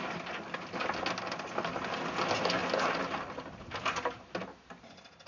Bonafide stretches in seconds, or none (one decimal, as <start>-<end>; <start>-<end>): 0.0-5.3